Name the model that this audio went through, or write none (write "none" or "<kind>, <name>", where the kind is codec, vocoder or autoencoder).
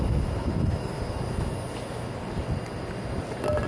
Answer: none